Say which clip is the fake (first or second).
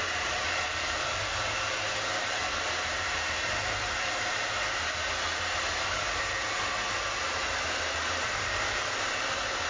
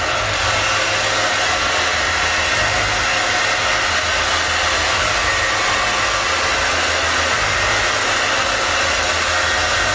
first